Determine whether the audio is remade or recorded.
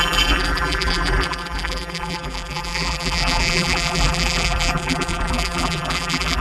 remade